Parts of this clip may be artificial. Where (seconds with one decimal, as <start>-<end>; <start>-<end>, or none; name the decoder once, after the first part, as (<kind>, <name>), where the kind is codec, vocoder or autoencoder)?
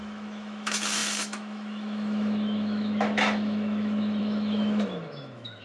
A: 0.0-5.6 (autoencoder, DAC-VAE)